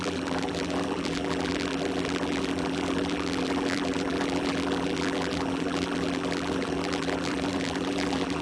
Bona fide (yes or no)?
no